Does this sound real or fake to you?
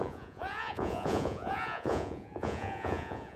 fake